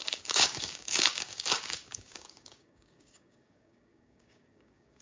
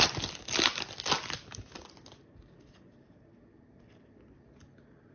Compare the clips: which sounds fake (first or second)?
first